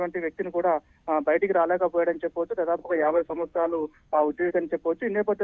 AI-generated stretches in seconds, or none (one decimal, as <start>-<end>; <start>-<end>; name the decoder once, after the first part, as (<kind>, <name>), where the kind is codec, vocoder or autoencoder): 2.8-4.5 (codec, SNAC)